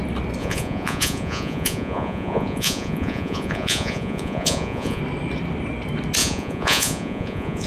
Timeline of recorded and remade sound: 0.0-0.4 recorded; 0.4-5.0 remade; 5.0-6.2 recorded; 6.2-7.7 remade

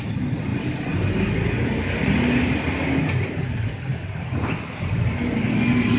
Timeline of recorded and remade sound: 0.0-3.9 recorded; 3.9-4.9 remade; 4.9-6.0 recorded

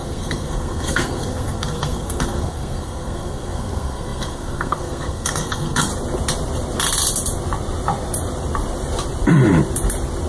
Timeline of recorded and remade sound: 0.0-5.9 remade; 5.9-10.3 recorded

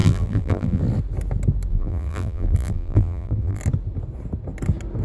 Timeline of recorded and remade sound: 0.0-0.8 remade; 0.8-1.7 recorded; 1.7-3.6 remade; 3.6-5.0 recorded